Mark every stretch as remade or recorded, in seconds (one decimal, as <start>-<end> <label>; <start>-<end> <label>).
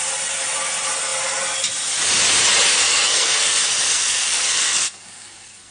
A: 0.0-2.7 recorded; 2.7-5.7 remade